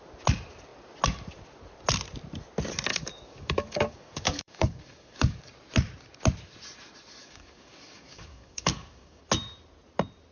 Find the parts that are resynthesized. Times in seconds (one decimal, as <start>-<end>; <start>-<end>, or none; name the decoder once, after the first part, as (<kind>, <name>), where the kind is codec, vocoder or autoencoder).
2.9-5.4 (codec, DAC); 7.2-9.2